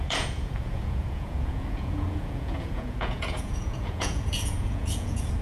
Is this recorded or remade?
remade